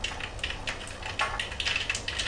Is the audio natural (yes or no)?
yes